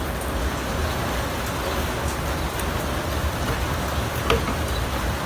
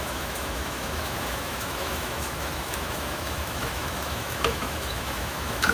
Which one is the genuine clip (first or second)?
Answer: first